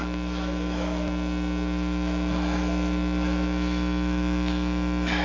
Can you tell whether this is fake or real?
fake